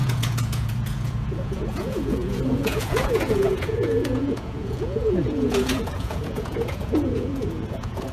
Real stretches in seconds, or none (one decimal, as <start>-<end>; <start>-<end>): none